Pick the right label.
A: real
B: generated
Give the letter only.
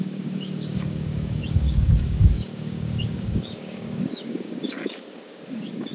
B